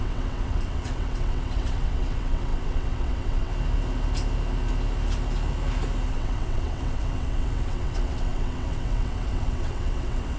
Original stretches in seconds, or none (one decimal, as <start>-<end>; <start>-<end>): 3.5-6.1